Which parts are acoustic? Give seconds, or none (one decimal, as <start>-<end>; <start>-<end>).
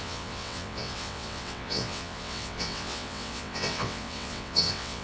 none